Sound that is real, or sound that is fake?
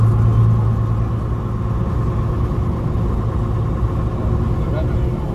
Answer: real